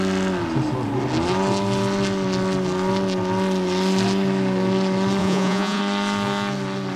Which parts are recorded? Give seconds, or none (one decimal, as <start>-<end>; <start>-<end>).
0.0-5.2; 5.8-7.0